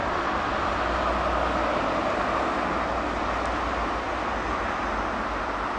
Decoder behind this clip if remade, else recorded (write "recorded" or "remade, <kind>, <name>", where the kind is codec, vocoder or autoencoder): recorded